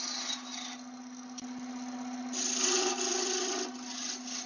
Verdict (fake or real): real